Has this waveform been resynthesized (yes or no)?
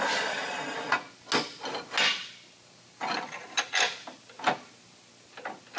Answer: no